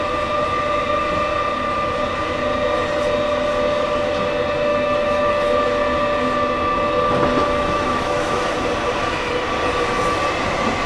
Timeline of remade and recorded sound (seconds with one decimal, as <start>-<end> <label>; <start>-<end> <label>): 0.0-4.7 recorded; 4.7-5.3 remade; 5.3-7.4 recorded; 7.4-8.5 remade; 8.5-10.9 recorded